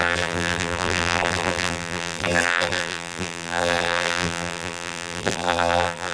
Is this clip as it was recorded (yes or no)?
no